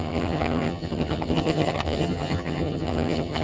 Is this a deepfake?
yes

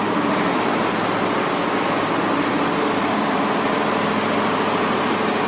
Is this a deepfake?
no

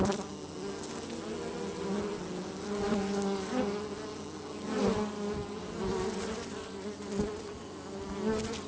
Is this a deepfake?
no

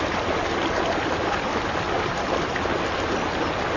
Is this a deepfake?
no